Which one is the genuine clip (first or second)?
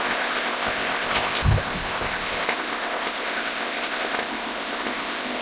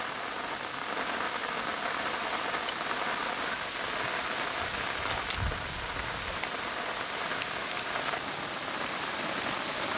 second